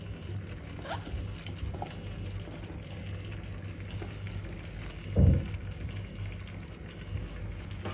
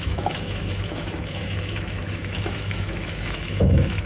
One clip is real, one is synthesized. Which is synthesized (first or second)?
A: second